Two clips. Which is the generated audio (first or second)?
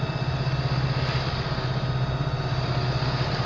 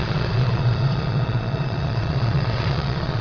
second